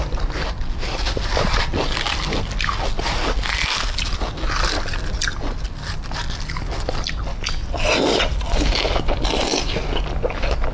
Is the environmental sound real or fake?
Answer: real